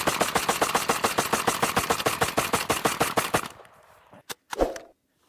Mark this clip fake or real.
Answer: real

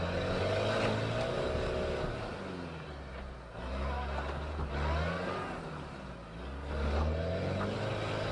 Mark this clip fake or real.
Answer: real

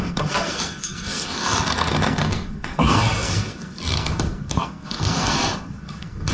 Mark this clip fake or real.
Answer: fake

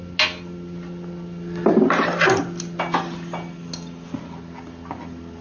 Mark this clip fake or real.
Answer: real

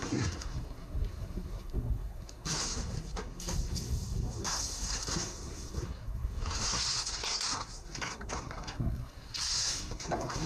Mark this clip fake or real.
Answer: fake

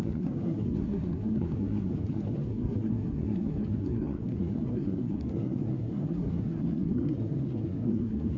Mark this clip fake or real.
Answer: fake